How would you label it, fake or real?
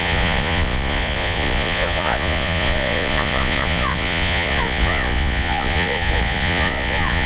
fake